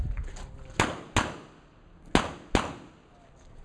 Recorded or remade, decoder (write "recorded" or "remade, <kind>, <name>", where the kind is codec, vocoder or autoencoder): recorded